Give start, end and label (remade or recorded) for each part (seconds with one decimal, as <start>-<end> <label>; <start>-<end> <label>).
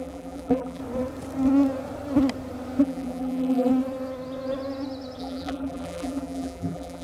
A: 0.0-0.8 remade; 0.8-2.8 recorded; 2.8-3.7 remade; 3.7-5.2 recorded; 5.2-7.0 remade